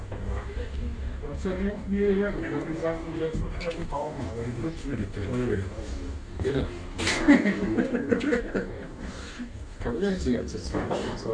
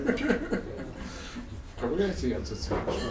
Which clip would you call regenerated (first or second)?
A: first